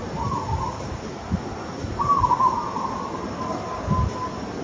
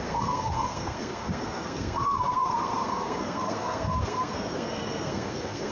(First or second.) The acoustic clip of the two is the first